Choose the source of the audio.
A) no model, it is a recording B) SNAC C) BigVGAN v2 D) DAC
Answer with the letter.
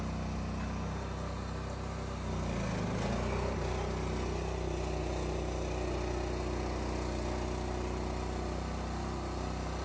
A